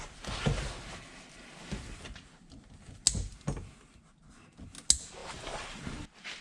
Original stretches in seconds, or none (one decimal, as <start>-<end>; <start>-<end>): 0.0-5.2; 5.8-6.4